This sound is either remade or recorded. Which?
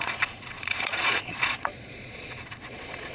remade